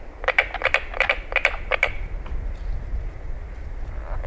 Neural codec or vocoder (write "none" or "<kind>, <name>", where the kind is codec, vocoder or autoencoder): none